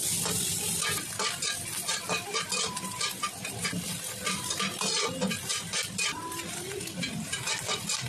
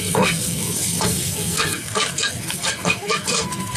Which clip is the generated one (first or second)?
second